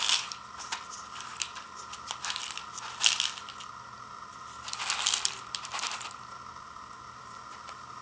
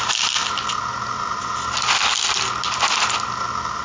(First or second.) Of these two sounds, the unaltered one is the second